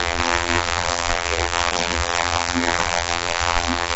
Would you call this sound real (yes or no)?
no